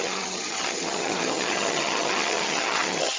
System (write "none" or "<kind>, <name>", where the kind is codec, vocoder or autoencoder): vocoder, HiFi-GAN